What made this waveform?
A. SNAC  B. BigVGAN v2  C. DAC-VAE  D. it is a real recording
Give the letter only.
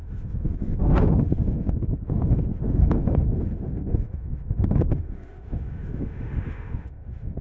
C